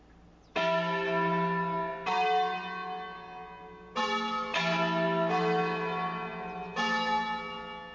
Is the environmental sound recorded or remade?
recorded